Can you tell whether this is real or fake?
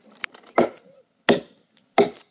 real